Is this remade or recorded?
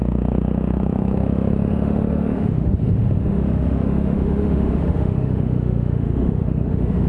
remade